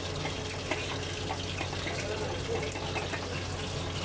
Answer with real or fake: real